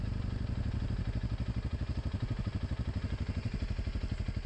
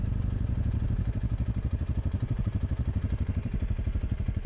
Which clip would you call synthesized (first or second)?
second